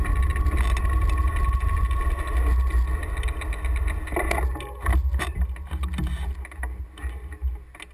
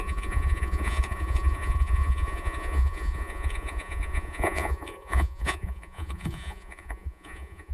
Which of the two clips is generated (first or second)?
second